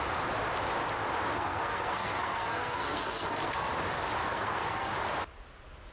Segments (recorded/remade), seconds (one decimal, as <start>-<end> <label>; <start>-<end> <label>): 0.0-1.3 recorded; 1.3-3.7 remade; 3.7-4.2 recorded; 4.2-4.9 remade; 4.9-5.9 recorded